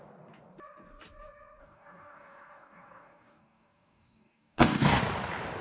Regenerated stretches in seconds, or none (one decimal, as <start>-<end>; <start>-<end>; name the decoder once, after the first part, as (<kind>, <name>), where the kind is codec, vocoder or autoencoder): 1.6-5.0 (codec, DAC)